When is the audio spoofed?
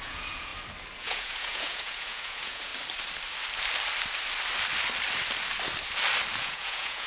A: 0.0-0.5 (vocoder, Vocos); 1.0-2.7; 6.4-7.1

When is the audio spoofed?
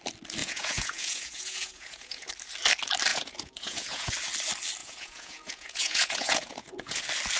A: 0.4-2.3 (vocoder, Vocos); 3.1-4.1; 4.8-7.0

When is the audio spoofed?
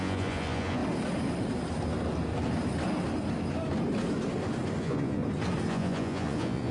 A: 0.0-0.8 (vocoder, Vocos); 4.8-5.2; 5.7-6.7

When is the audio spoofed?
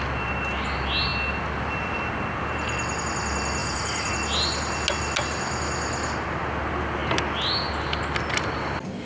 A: 3.6-4.1 (vocoder, Vocos)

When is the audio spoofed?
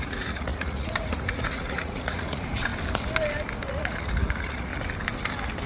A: 0.0-2.7 (vocoder, Vocos); 3.7-4.7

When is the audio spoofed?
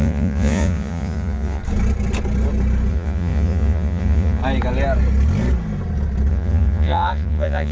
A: 0.0-1.6 (vocoder, Vocos); 2.9-4.4; 6.3-7.7